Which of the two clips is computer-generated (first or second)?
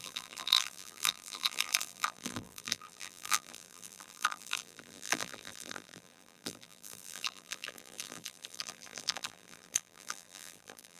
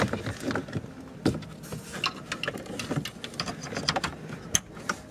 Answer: first